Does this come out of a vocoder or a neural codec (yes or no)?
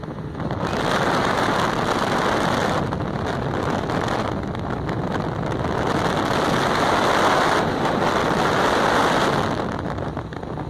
no